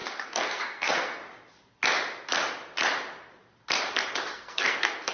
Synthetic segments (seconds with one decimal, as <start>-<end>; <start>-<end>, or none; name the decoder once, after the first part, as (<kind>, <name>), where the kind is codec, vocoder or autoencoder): 0.0-1.2 (codec, SNAC); 4.3-5.1